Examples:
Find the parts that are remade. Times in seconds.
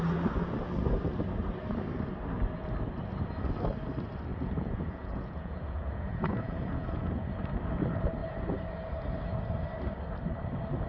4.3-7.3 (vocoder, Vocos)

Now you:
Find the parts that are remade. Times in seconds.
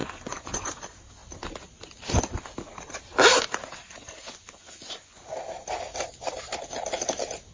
0.0-0.7 (vocoder, Vocos); 4.2-5.2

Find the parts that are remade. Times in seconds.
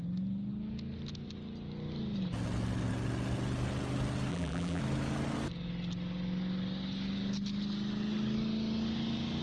4.3-4.8 (vocoder, BigVGAN v2)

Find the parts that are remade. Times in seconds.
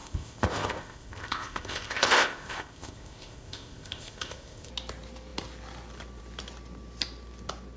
0.0-4.7 (codec, ZipCodec)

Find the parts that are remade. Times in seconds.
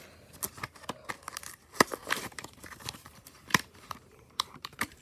2.0-5.0 (vocoder, BigVGAN v2)